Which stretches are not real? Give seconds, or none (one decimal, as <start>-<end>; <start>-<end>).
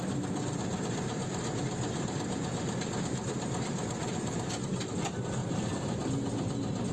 none